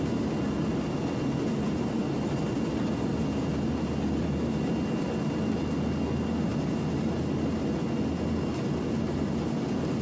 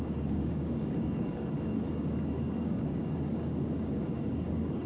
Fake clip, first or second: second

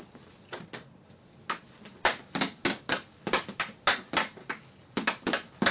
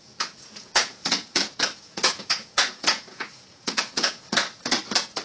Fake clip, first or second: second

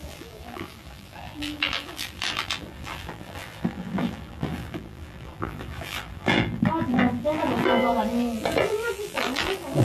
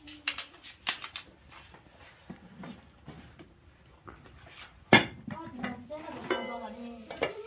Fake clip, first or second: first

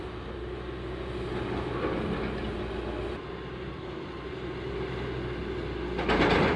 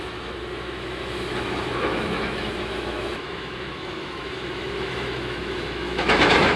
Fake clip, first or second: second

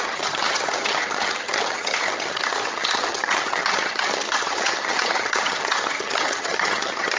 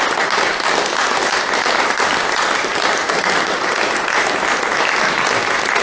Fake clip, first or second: first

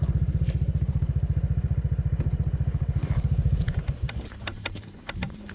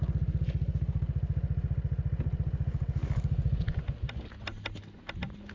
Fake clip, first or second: first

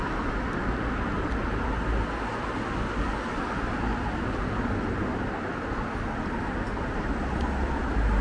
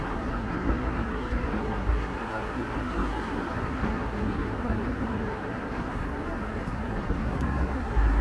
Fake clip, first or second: second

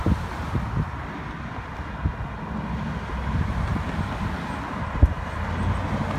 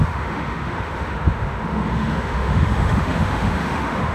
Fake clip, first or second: second